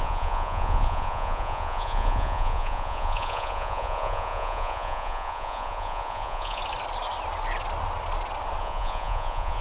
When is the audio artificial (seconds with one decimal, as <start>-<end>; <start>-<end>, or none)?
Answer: 0.0-6.6; 8.6-9.6